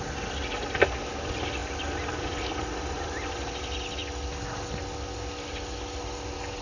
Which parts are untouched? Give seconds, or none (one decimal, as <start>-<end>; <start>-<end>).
0.0-6.6